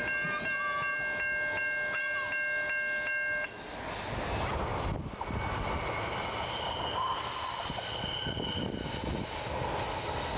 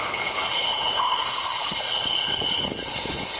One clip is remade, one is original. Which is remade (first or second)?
second